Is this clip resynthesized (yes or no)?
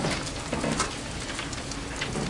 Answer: no